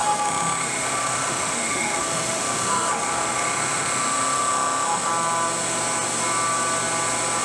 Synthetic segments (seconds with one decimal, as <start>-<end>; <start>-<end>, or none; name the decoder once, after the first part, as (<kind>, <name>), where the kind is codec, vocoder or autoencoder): 0.0-5.1 (autoencoder, DAC-VAE)